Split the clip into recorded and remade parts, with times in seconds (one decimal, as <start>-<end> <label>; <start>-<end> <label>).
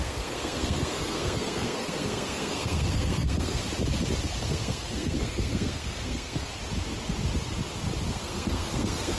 0.0-3.6 remade; 3.6-4.4 recorded; 4.4-6.5 remade; 6.5-8.1 recorded; 8.1-9.2 remade